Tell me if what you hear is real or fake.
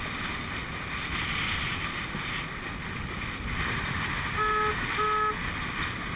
real